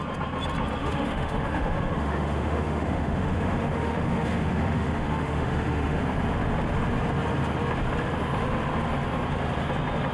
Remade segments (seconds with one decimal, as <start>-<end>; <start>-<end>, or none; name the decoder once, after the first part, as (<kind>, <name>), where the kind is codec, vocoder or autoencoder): 0.8-6.0 (autoencoder, DAC-VAE)